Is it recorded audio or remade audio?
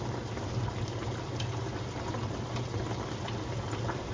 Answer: recorded